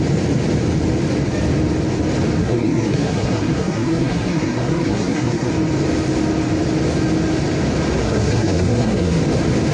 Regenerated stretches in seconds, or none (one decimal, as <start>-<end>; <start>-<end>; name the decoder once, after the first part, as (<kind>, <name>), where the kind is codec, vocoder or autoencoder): 2.4-5.5 (codec, SNAC); 8.0-9.2